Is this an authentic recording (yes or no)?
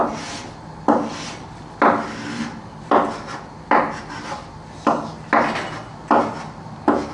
yes